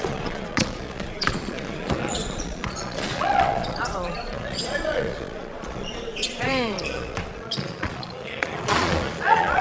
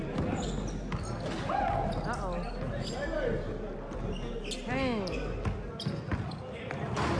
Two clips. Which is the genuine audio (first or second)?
second